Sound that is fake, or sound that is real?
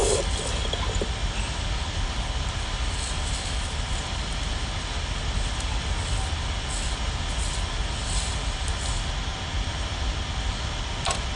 real